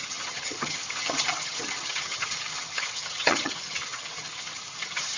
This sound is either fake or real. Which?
fake